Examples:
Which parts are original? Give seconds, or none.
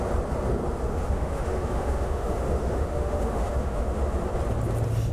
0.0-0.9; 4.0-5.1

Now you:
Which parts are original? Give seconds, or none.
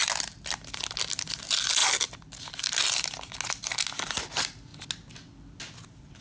0.0-6.2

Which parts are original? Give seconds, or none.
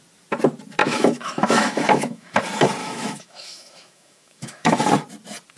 0.0-0.8; 2.4-2.8; 4.7-5.6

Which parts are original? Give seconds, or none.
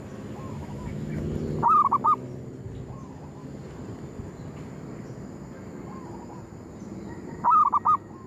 0.0-0.6; 1.2-8.3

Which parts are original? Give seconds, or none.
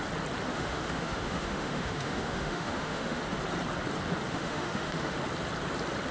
0.0-0.5; 3.2-4.3; 5.2-6.1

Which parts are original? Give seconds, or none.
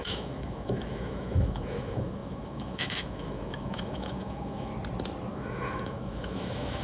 4.7-5.3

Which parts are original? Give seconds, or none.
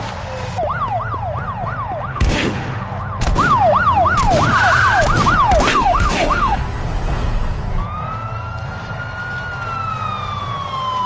0.0-2.1; 2.8-5.7; 6.6-11.1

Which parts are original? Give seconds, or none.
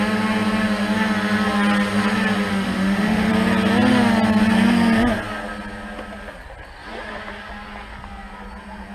0.0-2.5; 3.3-8.9